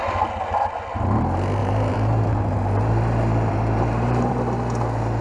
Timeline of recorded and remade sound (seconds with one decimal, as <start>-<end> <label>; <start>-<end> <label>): 0.0-1.6 recorded; 1.6-4.3 remade; 4.3-5.2 recorded